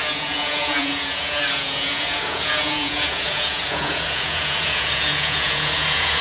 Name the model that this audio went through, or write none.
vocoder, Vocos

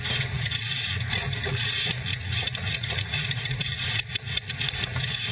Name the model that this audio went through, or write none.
vocoder, Vocos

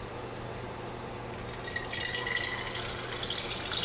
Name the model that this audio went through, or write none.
none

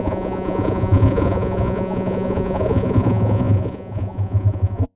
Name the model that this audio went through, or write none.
vocoder, Vocos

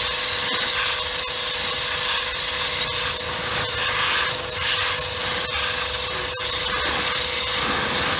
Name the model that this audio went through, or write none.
none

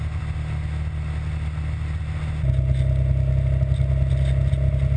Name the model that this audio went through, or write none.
none